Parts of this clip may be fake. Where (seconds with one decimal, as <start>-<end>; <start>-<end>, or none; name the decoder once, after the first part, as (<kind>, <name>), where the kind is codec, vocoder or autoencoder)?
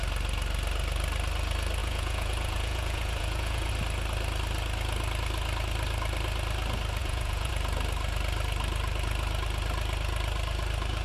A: 1.8-3.7 (vocoder, Vocos); 7.0-7.5